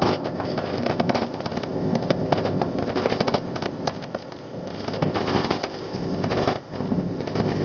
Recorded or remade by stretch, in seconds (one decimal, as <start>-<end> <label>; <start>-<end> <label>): 0.0-7.6 remade